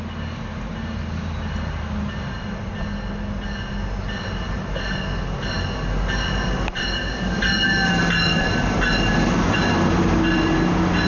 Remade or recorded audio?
recorded